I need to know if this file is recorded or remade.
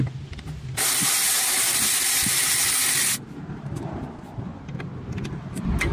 recorded